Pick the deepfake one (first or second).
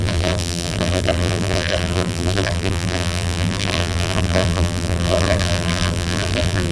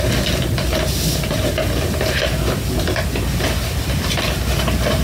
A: first